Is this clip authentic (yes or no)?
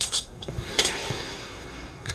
no